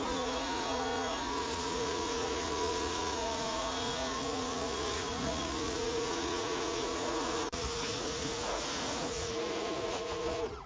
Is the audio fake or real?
fake